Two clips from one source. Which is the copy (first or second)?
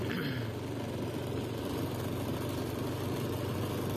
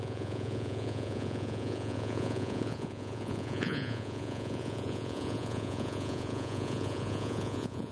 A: second